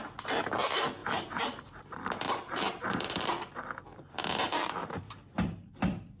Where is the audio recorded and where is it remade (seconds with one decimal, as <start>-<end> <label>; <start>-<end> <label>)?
0.0-1.0 recorded; 1.0-4.2 remade; 4.2-4.8 recorded; 4.8-5.7 remade; 5.7-6.2 recorded